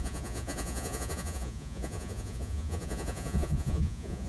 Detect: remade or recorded remade